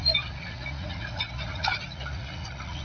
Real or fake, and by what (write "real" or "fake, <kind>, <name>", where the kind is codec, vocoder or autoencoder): fake, vocoder, Vocos